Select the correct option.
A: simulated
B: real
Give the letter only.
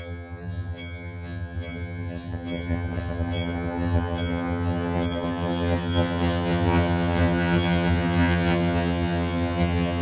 A